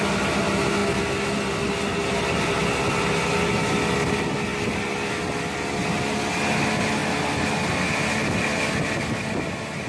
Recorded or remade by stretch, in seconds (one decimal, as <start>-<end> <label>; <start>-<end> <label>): 0.0-4.5 recorded; 4.5-5.2 remade; 5.2-9.9 recorded